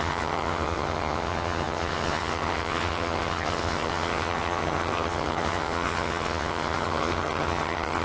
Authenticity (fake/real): fake